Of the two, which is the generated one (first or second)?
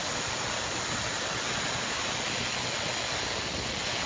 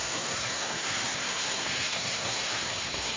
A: second